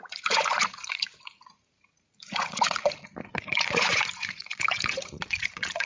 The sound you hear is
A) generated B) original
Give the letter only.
A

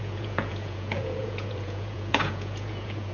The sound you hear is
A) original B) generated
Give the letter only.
B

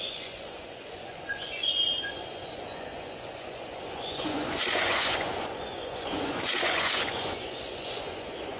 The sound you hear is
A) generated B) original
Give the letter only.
A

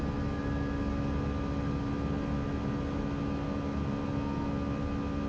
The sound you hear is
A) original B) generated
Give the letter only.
A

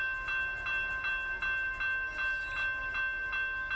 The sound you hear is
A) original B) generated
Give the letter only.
A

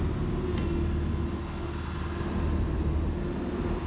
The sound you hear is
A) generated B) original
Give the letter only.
B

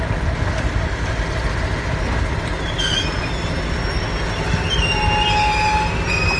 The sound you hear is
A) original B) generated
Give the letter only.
A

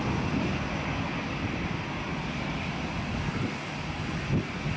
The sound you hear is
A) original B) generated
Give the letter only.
A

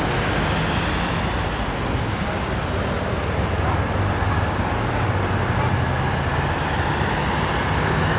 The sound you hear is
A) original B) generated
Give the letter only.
A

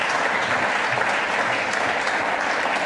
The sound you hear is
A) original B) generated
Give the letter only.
A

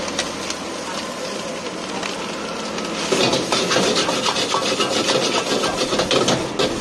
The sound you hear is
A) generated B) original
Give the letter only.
B